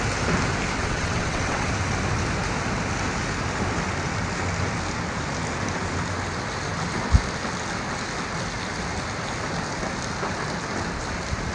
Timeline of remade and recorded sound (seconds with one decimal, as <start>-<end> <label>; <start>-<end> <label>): 0.0-0.8 recorded; 0.8-1.7 remade; 1.7-11.5 recorded